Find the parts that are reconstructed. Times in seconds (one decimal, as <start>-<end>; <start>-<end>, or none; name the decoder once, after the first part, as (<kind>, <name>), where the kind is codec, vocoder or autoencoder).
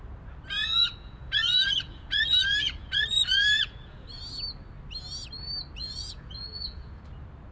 0.6-4.2 (vocoder, Vocos); 5.8-7.0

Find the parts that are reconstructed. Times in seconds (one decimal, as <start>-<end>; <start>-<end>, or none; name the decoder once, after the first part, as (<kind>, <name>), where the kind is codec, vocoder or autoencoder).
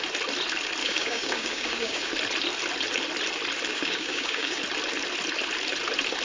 0.8-2.1 (codec, DAC); 3.7-4.6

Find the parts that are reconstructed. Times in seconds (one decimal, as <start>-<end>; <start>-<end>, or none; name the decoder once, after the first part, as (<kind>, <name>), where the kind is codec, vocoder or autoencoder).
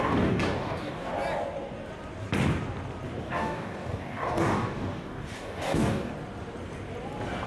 0.0-1.1 (codec, DAC); 3.2-6.1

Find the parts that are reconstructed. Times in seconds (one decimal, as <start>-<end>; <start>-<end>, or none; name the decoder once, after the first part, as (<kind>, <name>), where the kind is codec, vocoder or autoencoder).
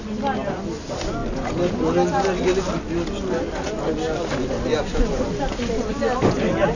none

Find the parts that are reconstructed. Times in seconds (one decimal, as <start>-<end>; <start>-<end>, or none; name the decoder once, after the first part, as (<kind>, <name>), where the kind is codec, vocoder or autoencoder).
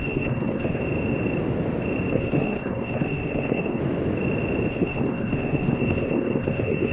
0.0-0.8 (codec, SNAC); 2.1-3.8; 4.7-6.9